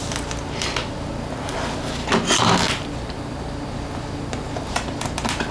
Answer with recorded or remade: recorded